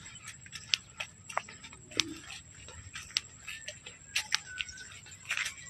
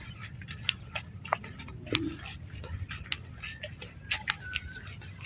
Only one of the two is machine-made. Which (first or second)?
second